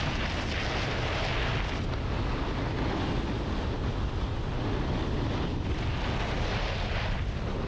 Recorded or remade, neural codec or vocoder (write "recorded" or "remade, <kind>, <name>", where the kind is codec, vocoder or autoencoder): recorded